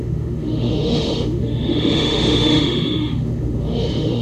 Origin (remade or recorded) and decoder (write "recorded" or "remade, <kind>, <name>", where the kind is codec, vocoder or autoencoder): remade, autoencoder, DAC-VAE